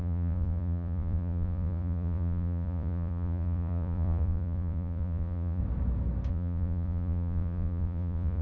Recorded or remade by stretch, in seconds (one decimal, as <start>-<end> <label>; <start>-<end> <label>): 0.0-5.6 remade; 5.6-6.3 recorded; 6.3-8.4 remade

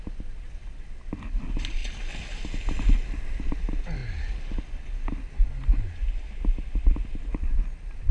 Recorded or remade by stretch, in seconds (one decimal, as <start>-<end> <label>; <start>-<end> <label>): 0.0-8.1 recorded

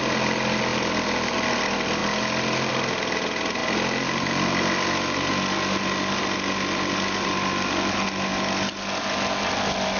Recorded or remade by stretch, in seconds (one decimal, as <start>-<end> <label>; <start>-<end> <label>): 0.0-10.0 recorded